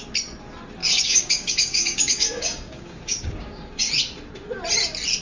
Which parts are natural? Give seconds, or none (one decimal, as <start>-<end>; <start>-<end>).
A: 0.0-0.8; 3.9-5.2